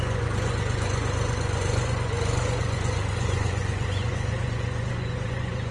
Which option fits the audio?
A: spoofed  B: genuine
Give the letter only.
A